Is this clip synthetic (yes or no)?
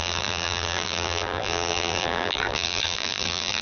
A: yes